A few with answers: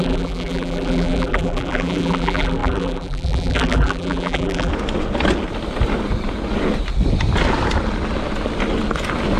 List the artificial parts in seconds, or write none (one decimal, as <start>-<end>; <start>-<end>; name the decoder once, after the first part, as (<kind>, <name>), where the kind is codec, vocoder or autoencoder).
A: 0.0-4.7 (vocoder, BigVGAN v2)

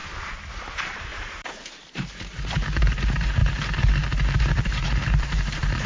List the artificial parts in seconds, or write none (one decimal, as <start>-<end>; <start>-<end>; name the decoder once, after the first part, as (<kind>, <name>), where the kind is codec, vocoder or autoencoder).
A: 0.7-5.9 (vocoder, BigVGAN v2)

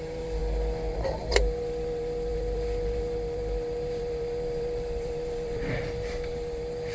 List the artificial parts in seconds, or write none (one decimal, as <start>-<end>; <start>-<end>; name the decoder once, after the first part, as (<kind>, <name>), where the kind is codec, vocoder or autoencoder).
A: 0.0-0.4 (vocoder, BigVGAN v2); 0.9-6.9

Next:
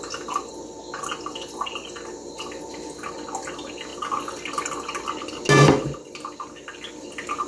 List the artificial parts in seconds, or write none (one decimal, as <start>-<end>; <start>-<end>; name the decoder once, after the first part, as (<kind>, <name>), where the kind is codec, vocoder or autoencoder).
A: none